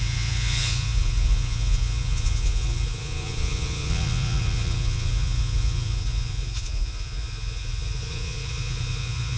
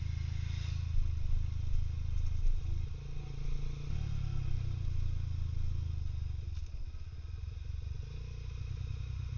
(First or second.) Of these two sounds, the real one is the second